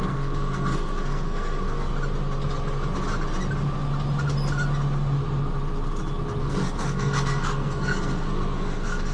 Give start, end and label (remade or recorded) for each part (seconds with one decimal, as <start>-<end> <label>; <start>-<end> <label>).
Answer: 0.0-1.9 remade; 1.9-6.4 recorded; 6.4-9.1 remade

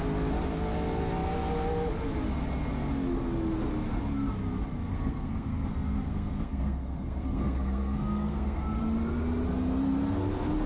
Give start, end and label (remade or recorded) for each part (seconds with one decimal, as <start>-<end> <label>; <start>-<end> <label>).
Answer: 0.0-4.9 recorded; 4.9-8.8 remade; 8.8-10.7 recorded